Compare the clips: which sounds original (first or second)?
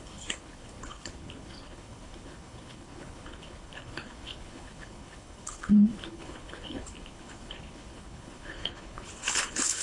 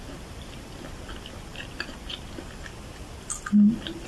second